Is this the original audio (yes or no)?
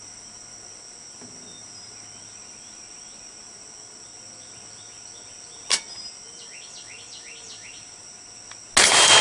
yes